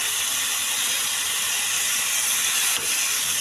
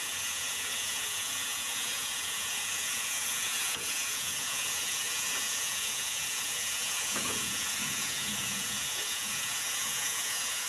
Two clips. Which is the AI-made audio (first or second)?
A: second